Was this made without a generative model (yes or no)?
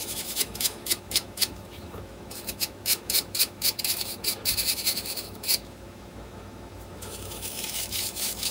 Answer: no